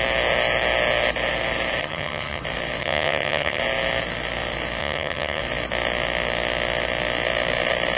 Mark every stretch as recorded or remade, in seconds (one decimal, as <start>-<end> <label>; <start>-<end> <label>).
0.0-1.8 recorded; 1.8-2.4 remade; 2.4-2.8 recorded; 2.8-3.6 remade; 3.6-4.8 recorded; 4.8-5.4 remade; 5.4-8.0 recorded